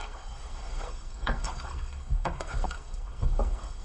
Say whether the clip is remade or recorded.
remade